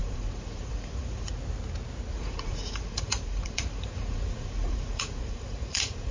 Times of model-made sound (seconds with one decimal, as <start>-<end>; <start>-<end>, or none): 0.0-1.3; 2.1-6.1